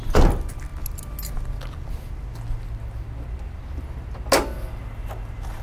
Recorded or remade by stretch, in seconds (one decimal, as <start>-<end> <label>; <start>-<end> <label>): 0.0-5.6 recorded